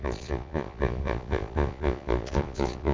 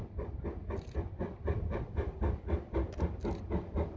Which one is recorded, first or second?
second